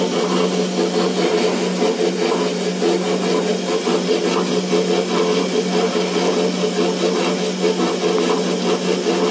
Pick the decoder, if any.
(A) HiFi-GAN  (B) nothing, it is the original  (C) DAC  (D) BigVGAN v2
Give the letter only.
B